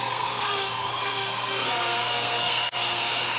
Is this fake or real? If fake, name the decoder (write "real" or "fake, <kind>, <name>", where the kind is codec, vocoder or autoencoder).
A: fake, codec, SNAC